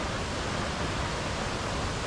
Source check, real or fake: real